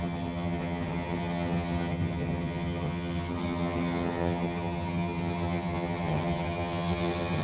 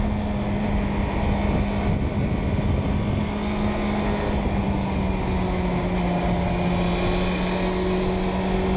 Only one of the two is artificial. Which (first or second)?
first